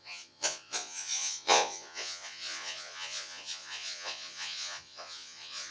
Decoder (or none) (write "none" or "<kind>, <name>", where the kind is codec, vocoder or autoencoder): vocoder, Vocos